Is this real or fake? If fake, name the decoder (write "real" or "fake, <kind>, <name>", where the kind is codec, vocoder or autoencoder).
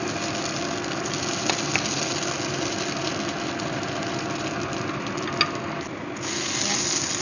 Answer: real